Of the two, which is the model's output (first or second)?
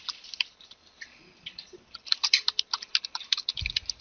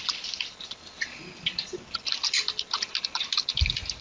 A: first